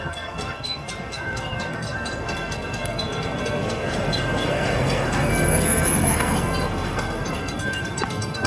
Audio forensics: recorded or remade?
remade